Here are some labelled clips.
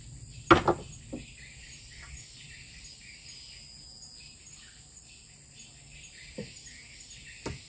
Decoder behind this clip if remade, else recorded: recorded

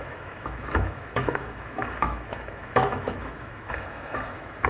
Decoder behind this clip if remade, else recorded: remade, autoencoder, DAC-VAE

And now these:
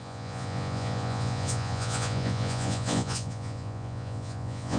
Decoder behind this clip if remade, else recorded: remade, vocoder, Vocos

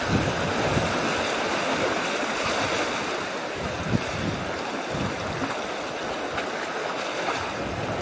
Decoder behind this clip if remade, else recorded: recorded